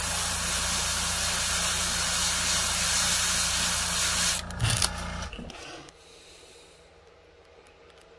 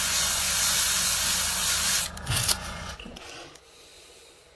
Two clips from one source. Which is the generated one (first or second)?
second